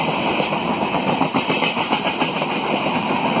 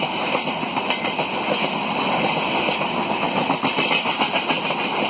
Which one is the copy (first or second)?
first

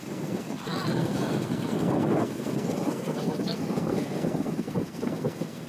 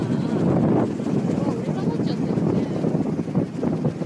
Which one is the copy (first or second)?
first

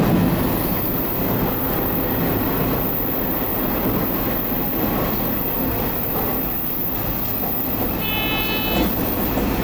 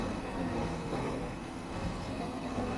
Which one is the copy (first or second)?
second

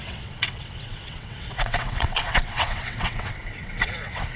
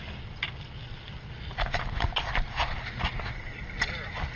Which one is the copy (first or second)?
first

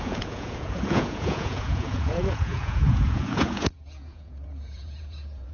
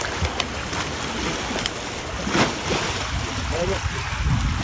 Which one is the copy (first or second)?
first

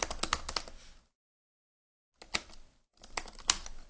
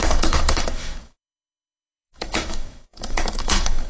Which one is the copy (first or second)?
second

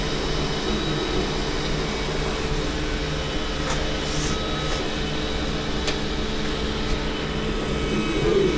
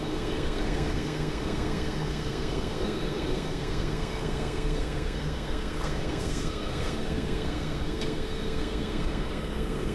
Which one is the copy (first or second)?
second